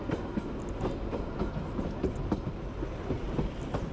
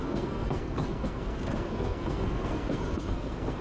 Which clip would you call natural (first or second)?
first